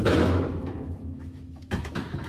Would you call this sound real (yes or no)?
no